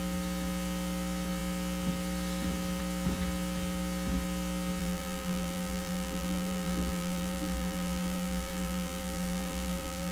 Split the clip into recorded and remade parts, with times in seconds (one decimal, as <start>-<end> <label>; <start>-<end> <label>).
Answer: 0.0-4.8 recorded; 4.8-10.1 remade